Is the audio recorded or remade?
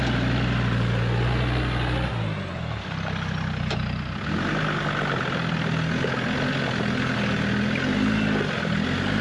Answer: recorded